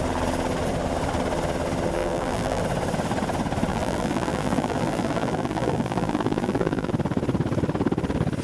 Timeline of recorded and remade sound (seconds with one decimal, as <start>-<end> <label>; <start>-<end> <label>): 0.0-2.0 recorded; 2.0-2.6 remade; 2.6-3.7 recorded; 3.7-6.9 remade; 6.9-8.4 recorded